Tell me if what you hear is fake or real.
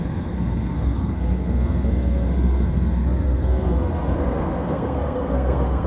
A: fake